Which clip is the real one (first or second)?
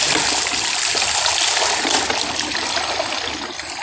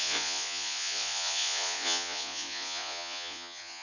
first